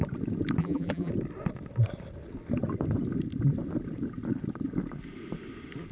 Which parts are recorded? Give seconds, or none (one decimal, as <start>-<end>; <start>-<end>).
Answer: 0.0-0.6; 1.1-5.9